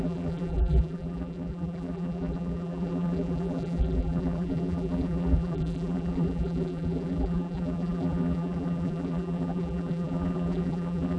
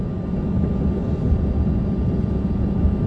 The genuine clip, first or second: second